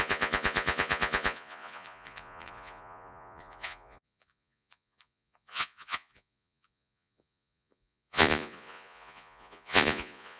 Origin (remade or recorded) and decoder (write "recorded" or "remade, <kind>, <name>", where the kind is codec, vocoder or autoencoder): remade, vocoder, Vocos